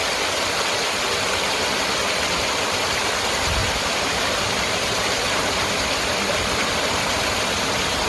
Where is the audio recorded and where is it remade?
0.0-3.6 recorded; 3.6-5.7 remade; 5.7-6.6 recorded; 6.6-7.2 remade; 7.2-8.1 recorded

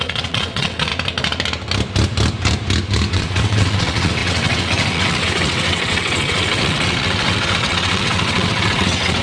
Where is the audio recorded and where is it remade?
0.0-0.9 remade; 0.9-3.1 recorded; 3.1-9.2 remade

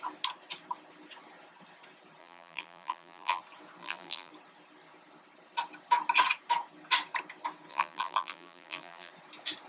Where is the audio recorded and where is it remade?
0.0-2.2 recorded; 2.2-3.4 remade; 3.4-3.8 recorded; 3.8-4.3 remade; 4.3-7.7 recorded; 7.7-9.1 remade; 9.1-9.7 recorded

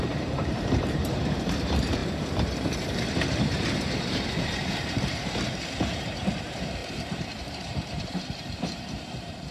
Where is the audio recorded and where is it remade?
0.0-9.5 remade